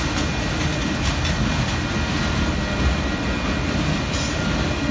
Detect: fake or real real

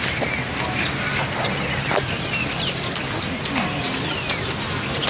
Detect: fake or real real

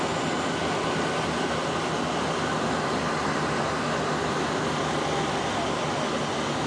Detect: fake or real real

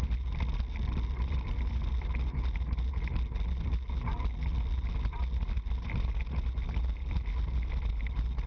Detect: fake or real real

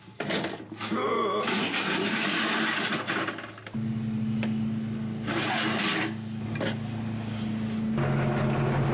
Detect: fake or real real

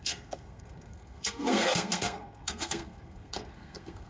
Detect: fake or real fake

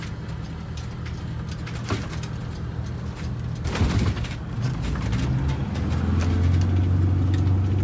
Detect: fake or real real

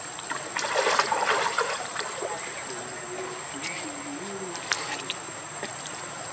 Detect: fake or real real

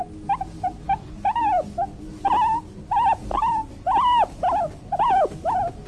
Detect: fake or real real